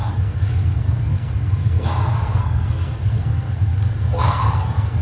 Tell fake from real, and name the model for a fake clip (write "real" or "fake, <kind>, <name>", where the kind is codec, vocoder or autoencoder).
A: fake, codec, SNAC